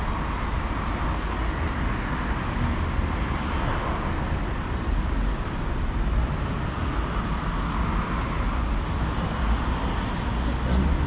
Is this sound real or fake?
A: real